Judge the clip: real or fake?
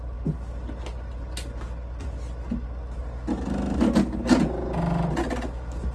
real